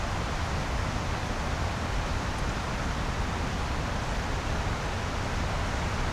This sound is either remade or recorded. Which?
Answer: recorded